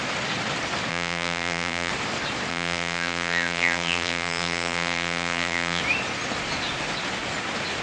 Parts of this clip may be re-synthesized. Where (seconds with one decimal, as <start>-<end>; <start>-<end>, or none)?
0.9-1.9; 2.5-5.8